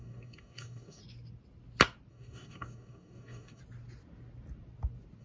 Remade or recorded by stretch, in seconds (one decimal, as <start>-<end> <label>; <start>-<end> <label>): 0.0-1.0 remade; 1.0-2.1 recorded; 2.1-3.6 remade; 3.6-5.2 recorded